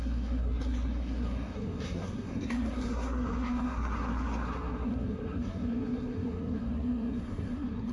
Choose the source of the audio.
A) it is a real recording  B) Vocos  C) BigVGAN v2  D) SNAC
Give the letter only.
D